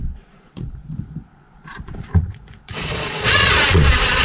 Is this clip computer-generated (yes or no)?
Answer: yes